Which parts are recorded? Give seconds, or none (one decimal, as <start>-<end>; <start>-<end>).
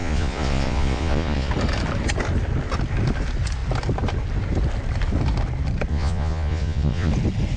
1.5-5.9; 7.1-7.6